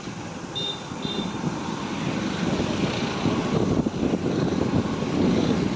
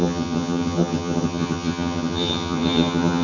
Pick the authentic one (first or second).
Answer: first